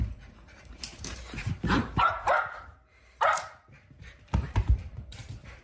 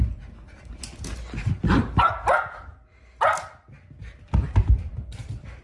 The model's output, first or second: first